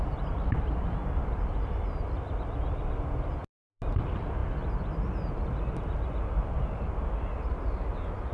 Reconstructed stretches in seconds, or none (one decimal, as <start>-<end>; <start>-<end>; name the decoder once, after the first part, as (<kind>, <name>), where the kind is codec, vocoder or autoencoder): none